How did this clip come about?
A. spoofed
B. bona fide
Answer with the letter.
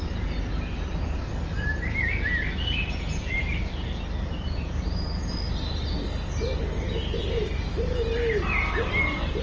B